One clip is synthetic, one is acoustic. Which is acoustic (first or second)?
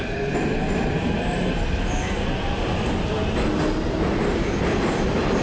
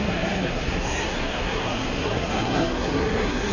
first